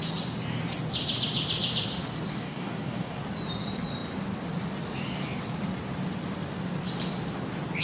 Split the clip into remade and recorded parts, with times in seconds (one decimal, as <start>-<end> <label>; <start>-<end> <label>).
0.0-2.3 recorded; 2.3-3.2 remade; 3.2-7.8 recorded